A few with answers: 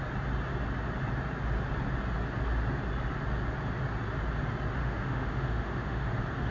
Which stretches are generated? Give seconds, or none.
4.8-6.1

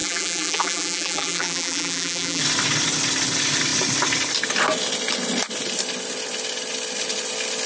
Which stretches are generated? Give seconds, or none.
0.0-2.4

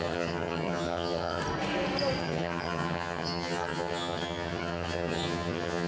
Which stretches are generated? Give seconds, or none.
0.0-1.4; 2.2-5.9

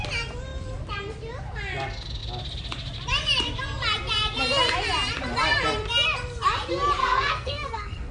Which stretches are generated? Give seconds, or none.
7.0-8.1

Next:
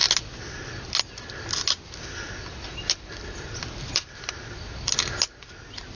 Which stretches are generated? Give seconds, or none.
none